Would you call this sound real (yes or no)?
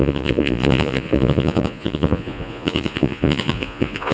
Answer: no